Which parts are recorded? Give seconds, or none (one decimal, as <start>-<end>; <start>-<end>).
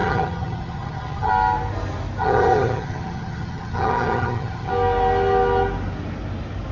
1.3-2.2; 4.7-6.7